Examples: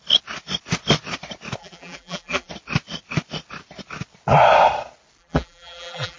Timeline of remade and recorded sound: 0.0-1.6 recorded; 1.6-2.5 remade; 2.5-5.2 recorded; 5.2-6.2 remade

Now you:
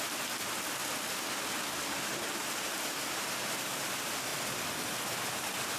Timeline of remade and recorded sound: 0.0-0.8 recorded; 0.8-3.9 remade; 3.9-5.8 recorded

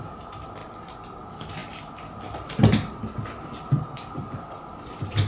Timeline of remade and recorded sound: 0.0-5.3 recorded

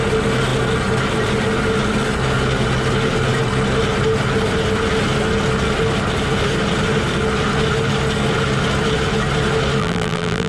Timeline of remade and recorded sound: 0.0-9.8 recorded; 9.8-10.5 remade

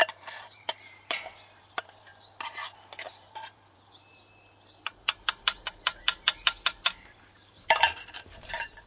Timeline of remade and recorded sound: 0.0-2.1 remade; 2.1-3.1 recorded; 3.1-8.9 remade

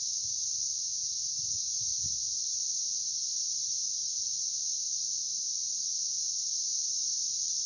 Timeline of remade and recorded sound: 0.0-1.9 recorded; 1.9-5.7 remade; 5.7-6.7 recorded; 6.7-7.7 remade

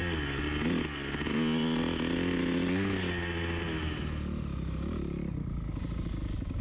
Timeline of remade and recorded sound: 0.0-6.6 recorded

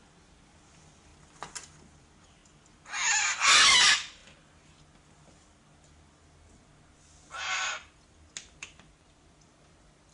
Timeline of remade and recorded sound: 0.0-1.1 remade; 1.1-2.0 recorded; 2.0-2.4 remade; 2.4-3.2 recorded; 3.2-4.2 remade; 4.2-8.6 recorded; 8.6-10.1 remade